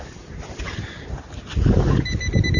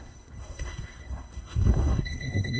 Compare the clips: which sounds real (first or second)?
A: first